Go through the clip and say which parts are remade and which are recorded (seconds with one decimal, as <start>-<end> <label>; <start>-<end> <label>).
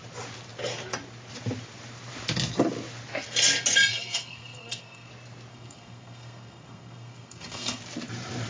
0.0-3.9 recorded; 3.9-5.1 remade; 5.1-5.5 recorded; 5.5-7.8 remade; 7.8-8.5 recorded